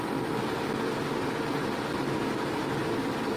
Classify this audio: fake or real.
real